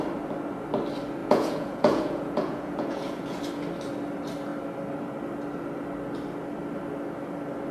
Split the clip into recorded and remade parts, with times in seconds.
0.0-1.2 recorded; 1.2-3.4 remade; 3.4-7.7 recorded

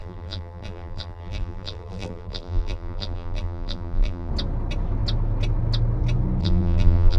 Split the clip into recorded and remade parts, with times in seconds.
0.0-4.3 remade; 4.3-6.4 recorded; 6.4-7.2 remade

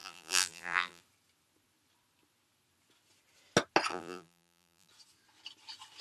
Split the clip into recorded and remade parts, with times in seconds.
0.0-1.0 remade; 1.0-3.9 recorded; 3.9-4.9 remade; 4.9-6.0 recorded

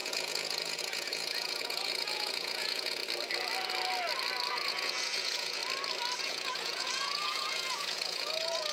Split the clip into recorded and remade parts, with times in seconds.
0.0-3.0 remade; 3.0-4.5 recorded; 4.5-5.6 remade; 5.6-6.2 recorded; 6.2-8.7 remade

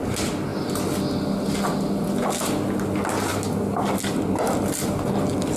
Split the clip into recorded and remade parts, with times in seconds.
0.0-5.6 recorded